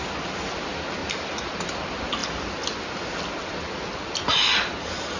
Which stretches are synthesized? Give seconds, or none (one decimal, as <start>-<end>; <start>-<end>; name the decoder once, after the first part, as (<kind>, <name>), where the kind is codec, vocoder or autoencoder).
1.0-1.7 (vocoder, BigVGAN v2)